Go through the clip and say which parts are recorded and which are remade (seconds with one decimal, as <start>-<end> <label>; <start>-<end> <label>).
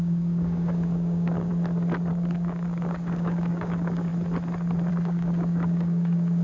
0.0-1.5 remade; 1.5-2.1 recorded; 2.1-4.1 remade; 4.1-4.9 recorded; 4.9-6.4 remade